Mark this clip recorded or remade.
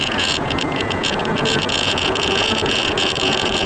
remade